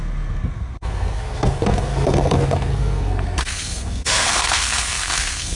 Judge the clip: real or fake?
fake